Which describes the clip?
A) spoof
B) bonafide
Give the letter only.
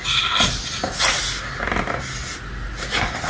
B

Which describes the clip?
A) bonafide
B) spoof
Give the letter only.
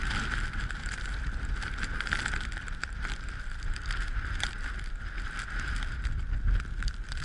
A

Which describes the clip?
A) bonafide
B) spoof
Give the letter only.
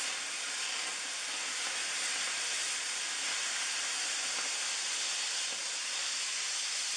A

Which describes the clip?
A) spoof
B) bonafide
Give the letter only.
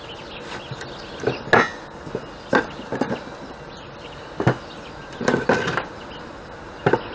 B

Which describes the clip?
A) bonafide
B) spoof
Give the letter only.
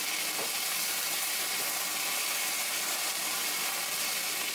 A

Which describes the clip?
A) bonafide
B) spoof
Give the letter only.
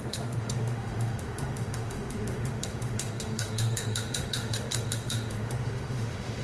B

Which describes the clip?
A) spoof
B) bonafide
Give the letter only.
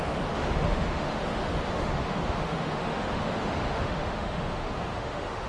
A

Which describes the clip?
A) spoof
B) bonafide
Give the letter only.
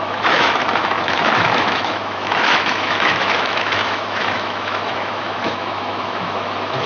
A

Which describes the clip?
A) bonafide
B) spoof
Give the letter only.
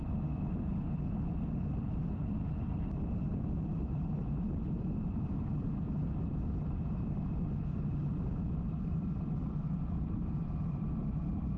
A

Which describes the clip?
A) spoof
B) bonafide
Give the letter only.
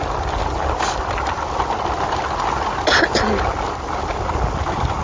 B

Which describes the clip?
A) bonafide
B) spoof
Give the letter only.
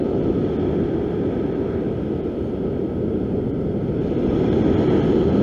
A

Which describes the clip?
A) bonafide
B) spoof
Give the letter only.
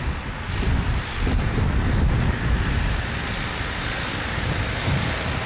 A